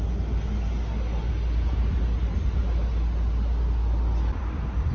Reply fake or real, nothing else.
real